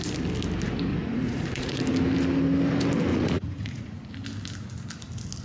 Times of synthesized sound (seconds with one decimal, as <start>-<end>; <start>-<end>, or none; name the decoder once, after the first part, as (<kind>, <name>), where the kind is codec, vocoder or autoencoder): 0.9-1.8 (vocoder, Vocos); 3.1-4.0